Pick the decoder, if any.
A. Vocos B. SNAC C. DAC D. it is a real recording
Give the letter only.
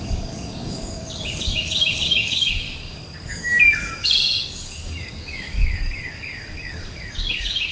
C